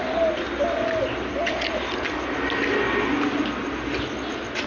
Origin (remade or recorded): recorded